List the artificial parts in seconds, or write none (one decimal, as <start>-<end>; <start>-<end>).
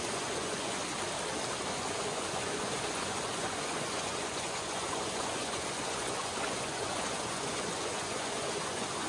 0.0-0.8; 1.7-9.1